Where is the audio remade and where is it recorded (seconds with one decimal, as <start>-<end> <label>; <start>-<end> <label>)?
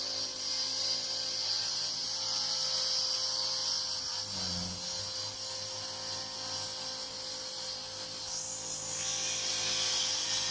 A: 0.0-10.5 recorded